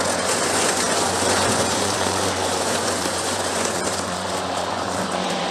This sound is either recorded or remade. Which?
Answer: remade